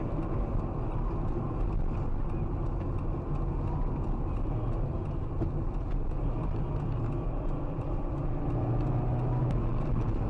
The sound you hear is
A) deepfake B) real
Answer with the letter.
B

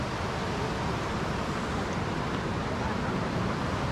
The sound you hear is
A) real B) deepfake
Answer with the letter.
A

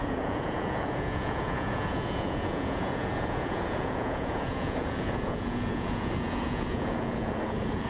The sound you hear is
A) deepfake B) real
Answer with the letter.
A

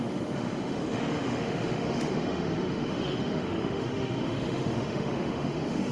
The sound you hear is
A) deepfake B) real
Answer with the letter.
A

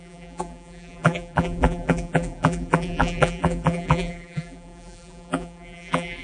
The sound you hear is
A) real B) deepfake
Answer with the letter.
B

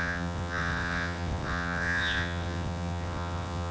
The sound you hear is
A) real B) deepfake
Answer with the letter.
B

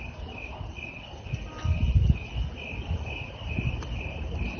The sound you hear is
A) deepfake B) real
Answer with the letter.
B